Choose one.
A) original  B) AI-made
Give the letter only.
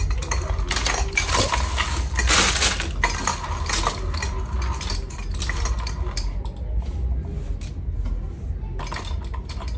A